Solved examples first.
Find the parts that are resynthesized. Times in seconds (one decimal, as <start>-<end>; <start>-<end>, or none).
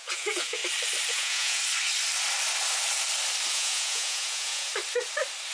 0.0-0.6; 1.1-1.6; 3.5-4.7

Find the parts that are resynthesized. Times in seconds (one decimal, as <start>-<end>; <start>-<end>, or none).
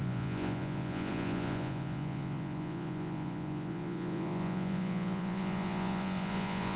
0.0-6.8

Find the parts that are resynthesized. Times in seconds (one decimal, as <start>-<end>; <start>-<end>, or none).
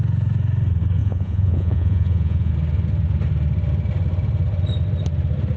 1.0-2.5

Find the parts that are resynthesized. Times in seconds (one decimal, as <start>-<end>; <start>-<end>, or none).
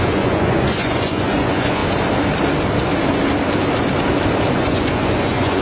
0.0-1.8; 4.5-5.6